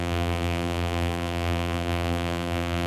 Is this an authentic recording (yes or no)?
no